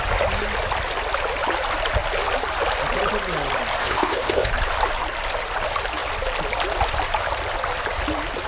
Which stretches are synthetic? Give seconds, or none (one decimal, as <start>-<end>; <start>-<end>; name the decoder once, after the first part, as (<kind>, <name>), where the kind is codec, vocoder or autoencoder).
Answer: 3.8-4.5 (codec, ZipCodec)